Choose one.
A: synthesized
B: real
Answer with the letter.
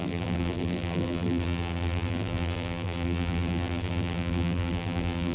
A